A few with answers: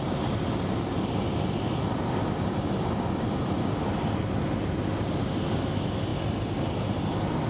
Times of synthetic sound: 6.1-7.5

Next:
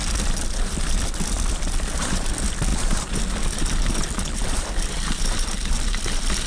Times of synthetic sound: none

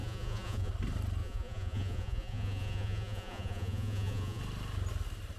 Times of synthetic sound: 0.0-0.7; 1.2-4.4

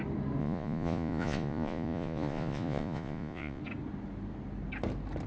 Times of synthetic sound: 0.4-3.6

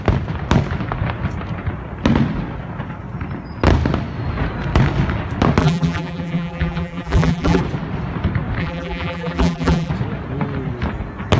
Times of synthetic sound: 5.6-7.6; 8.6-9.9

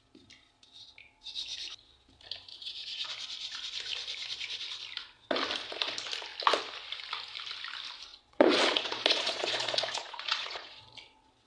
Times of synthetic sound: 2.5-3.1; 8.1-10.8

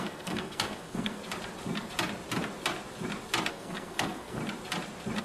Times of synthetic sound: 0.0-1.2; 3.5-4.4

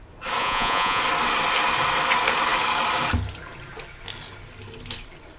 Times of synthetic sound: 0.4-1.0